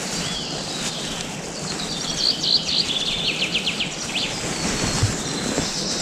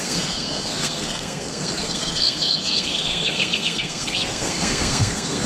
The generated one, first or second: second